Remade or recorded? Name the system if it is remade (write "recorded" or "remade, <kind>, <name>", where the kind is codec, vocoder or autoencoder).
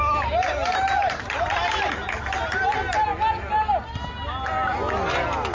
recorded